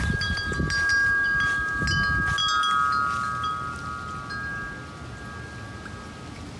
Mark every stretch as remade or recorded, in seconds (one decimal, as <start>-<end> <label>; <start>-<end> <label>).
0.0-6.6 recorded